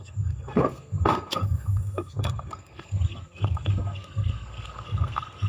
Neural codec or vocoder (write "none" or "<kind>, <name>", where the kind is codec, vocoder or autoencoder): codec, SNAC